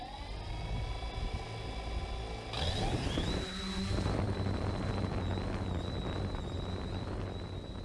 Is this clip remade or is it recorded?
recorded